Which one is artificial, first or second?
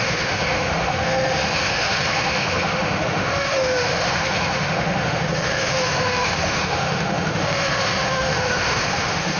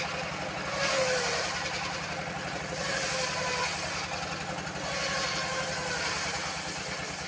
first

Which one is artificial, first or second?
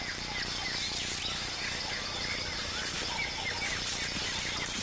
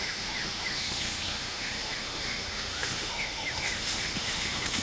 second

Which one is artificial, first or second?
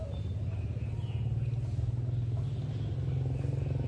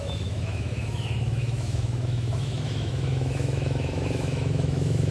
second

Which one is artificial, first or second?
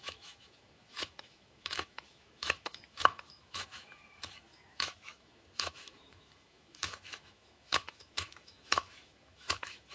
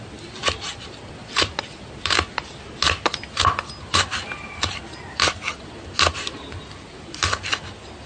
first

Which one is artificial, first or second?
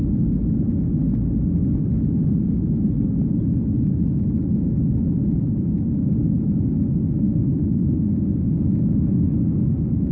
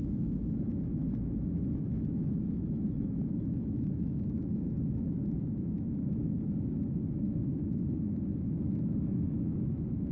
second